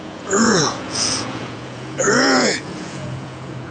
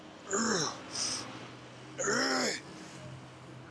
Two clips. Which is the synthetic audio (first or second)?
first